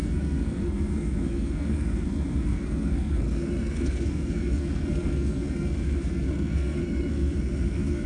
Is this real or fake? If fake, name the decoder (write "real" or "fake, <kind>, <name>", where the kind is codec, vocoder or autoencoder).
fake, codec, SNAC